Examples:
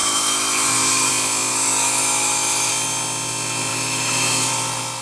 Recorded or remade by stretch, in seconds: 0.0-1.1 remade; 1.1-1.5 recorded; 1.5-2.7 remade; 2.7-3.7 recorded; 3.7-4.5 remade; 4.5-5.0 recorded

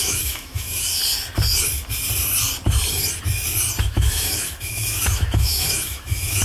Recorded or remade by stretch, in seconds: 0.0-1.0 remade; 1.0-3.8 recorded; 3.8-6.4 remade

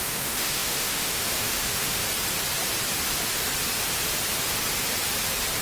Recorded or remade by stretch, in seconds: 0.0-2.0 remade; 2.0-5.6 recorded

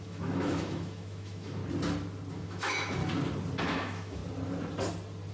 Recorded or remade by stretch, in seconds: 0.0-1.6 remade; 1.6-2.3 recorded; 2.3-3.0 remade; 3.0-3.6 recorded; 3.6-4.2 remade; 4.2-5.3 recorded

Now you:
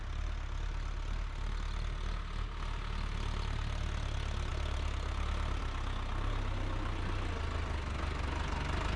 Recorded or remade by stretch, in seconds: 0.0-9.0 recorded

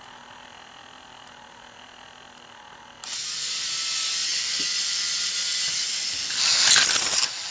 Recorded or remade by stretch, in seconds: 0.0-7.5 recorded

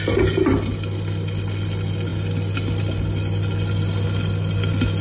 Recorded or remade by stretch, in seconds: 0.0-5.0 recorded

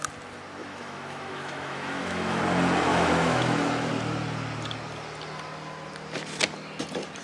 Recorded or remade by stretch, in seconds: 0.0-0.6 recorded; 0.6-2.4 remade; 2.4-2.9 recorded; 2.9-3.9 remade; 3.9-7.2 recorded